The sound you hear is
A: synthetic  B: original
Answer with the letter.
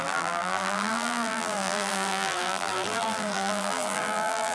A